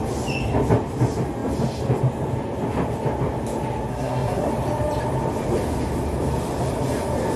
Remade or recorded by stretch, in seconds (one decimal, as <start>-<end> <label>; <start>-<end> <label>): 0.0-3.9 recorded; 3.9-4.5 remade; 4.5-7.4 recorded